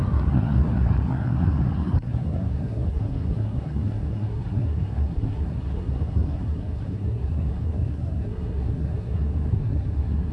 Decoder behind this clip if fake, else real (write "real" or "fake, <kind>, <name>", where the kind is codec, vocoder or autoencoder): fake, codec, SNAC